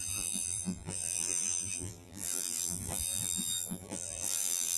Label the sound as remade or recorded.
remade